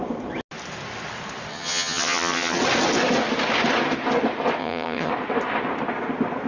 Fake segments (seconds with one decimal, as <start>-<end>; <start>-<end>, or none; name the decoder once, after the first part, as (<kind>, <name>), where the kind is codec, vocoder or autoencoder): 1.5-2.6 (vocoder, HiFi-GAN); 4.6-5.1